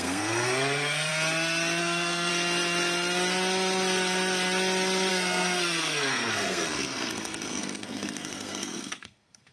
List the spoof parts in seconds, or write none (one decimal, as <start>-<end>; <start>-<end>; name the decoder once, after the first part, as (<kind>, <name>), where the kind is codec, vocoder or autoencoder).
0.0-1.1 (codec, SNAC); 1.8-2.3; 5.1-9.5